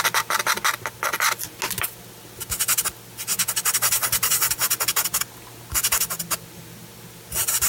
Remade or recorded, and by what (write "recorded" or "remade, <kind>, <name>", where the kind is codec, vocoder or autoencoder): recorded